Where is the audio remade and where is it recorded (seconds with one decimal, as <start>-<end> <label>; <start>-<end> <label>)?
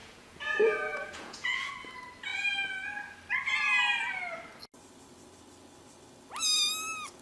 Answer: 0.0-1.7 remade; 1.7-7.2 recorded